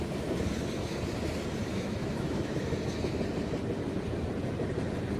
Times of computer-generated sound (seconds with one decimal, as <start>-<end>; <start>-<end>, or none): 1.7-2.8